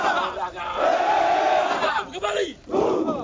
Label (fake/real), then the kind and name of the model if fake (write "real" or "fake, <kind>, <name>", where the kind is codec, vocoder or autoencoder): real